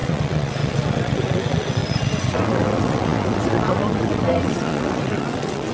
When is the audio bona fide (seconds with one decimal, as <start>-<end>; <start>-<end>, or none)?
none